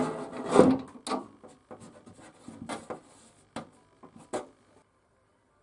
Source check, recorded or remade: recorded